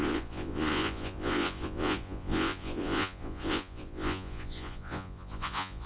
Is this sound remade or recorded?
remade